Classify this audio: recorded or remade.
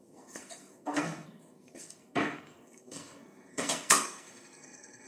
remade